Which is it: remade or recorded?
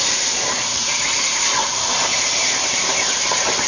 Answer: remade